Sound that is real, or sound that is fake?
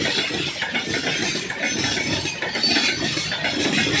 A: real